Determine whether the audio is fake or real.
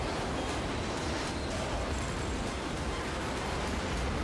real